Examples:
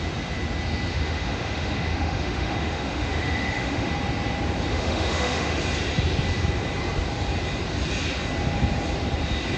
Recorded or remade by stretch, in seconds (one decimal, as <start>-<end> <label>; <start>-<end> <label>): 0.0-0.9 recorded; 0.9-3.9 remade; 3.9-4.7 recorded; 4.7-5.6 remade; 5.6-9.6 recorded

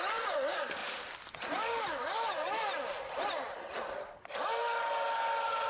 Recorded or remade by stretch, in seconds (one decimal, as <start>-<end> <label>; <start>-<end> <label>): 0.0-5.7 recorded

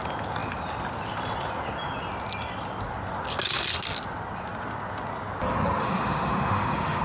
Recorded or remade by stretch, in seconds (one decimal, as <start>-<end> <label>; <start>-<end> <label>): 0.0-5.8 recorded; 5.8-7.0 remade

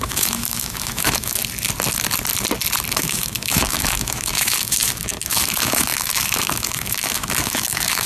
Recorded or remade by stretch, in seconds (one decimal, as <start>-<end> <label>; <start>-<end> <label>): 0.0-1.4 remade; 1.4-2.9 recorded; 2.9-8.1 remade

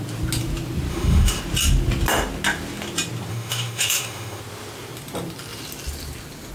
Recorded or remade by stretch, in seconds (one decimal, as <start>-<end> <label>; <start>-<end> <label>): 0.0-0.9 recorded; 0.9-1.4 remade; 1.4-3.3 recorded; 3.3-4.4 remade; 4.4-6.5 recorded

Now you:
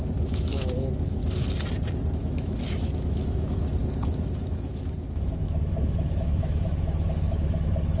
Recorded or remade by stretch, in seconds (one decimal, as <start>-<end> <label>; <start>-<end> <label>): 0.0-1.2 remade; 1.2-2.1 recorded; 2.1-8.0 remade